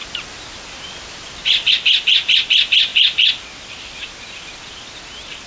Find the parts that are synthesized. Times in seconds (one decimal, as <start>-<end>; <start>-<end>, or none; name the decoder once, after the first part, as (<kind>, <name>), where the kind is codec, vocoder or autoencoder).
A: none